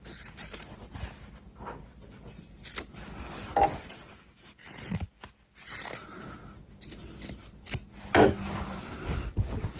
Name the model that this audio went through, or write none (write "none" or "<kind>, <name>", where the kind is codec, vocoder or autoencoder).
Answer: none